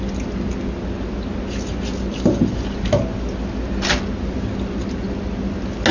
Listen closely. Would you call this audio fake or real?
real